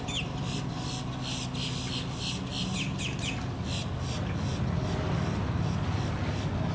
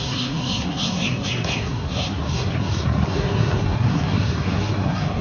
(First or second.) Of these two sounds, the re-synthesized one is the second